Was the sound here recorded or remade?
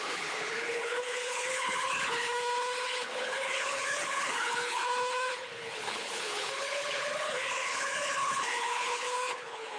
remade